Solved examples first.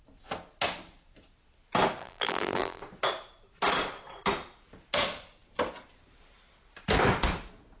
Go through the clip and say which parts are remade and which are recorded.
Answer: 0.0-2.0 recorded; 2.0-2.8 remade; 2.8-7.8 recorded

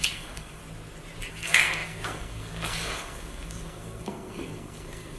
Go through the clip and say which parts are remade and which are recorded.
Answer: 0.0-0.6 remade; 0.6-1.3 recorded; 1.3-5.2 remade